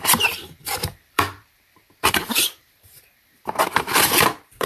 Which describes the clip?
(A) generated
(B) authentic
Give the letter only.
A